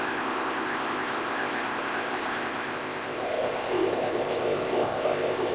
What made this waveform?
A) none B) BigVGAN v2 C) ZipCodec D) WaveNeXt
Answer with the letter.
C